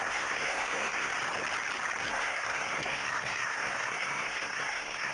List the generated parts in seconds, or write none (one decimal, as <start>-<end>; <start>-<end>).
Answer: 0.0-1.1; 2.1-5.1